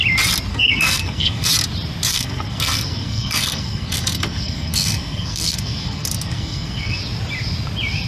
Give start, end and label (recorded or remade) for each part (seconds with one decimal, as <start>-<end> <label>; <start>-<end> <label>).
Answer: 0.0-0.5 recorded; 0.5-1.5 remade; 1.5-2.1 recorded; 2.1-7.0 remade; 7.0-8.1 recorded